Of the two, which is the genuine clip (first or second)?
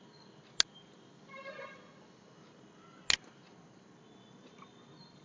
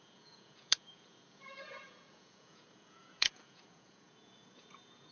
first